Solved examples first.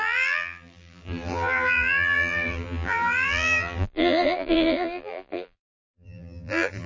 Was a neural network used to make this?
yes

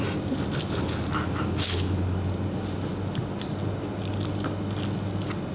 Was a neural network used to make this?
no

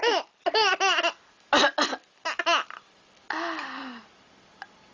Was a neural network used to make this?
no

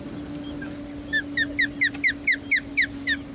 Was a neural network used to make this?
no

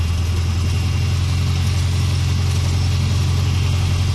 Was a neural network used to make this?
no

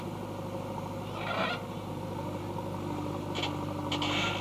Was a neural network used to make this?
no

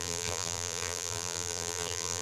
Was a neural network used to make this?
yes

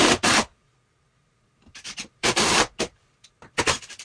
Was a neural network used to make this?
yes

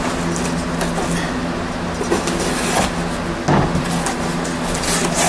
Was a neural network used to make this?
no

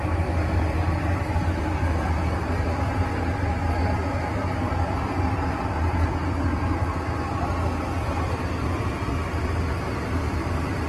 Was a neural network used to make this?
no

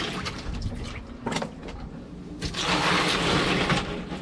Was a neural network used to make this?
no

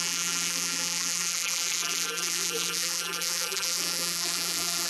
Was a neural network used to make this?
yes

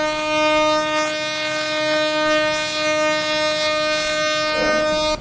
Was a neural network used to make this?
no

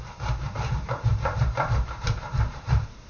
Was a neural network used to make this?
yes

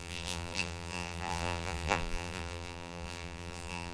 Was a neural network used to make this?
yes